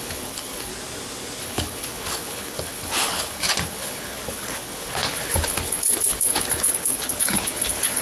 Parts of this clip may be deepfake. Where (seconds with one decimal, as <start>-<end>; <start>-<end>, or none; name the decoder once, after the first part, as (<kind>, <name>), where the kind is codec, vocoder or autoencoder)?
0.0-0.7 (codec, HILCodec); 1.4-8.0